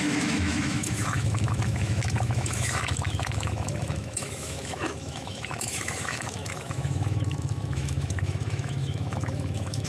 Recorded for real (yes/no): no